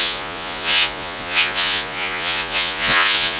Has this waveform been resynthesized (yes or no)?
yes